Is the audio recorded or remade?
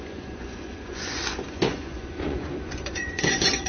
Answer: remade